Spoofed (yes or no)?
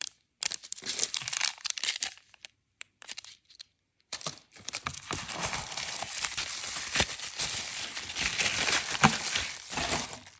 yes